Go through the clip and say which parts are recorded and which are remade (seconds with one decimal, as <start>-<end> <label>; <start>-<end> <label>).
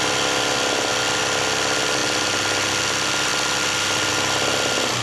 0.0-5.0 recorded